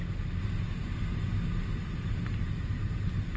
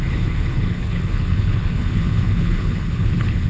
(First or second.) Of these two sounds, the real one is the first